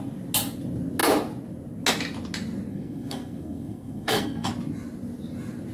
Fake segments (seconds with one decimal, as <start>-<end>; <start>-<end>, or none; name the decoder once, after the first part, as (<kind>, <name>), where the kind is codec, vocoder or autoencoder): 2.7-4.5 (codec, SNAC)